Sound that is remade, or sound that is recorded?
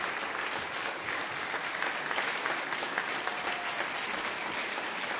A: remade